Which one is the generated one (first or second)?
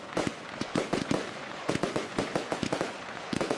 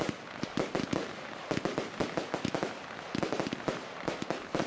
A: first